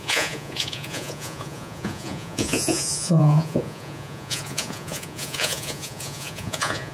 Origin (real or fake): fake